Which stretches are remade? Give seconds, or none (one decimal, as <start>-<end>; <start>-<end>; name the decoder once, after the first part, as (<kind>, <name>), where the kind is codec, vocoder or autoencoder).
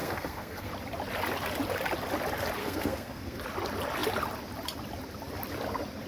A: 0.0-0.7 (codec, SNAC); 2.6-3.4